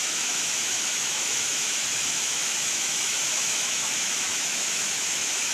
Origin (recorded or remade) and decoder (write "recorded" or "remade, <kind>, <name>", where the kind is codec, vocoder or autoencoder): remade, autoencoder, DAC-VAE